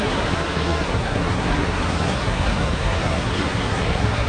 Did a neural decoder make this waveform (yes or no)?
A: yes